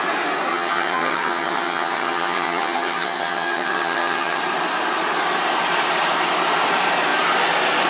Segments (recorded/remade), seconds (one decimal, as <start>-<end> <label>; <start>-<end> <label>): 0.0-0.5 recorded; 0.5-4.4 remade; 4.4-7.9 recorded